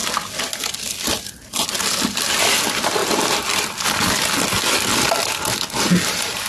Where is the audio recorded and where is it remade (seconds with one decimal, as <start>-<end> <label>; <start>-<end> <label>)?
0.0-6.5 recorded